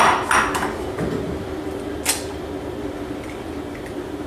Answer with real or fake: real